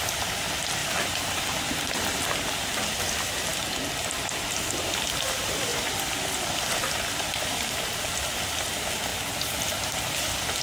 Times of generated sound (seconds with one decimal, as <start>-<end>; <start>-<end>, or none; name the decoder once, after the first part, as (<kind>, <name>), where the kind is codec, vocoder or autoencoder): 0.8-2.3 (vocoder, BigVGAN v2); 5.7-7.6